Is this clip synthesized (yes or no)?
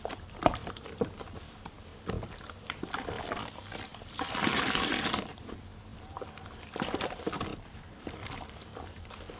yes